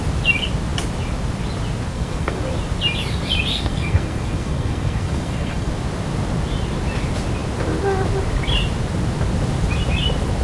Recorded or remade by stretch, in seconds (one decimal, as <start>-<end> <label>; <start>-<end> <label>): 0.0-1.9 recorded; 1.9-2.4 remade; 2.4-3.5 recorded; 3.5-5.7 remade; 5.7-10.4 recorded